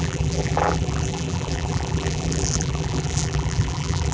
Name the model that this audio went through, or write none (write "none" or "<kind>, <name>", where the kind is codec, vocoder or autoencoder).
vocoder, BigVGAN v2